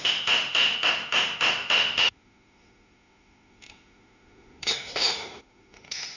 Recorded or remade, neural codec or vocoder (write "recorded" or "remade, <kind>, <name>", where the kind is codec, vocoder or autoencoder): remade, autoencoder, DAC-VAE